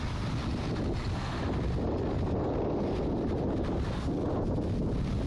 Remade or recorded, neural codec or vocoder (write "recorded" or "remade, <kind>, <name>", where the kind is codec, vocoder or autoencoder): recorded